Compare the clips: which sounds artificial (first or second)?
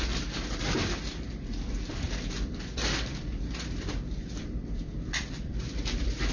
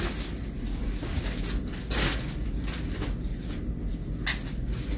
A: first